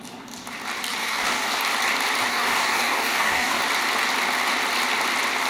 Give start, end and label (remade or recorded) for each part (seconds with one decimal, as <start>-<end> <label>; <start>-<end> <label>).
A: 0.0-1.0 recorded; 1.0-1.6 remade; 1.6-2.3 recorded; 2.3-3.6 remade; 3.6-5.5 recorded